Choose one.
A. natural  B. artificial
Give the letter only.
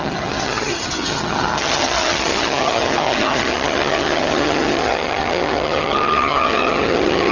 B